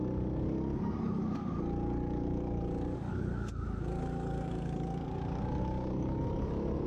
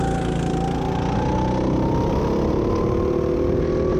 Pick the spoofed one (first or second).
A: first